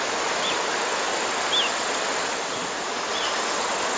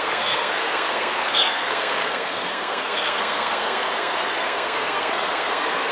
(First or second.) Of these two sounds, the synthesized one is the second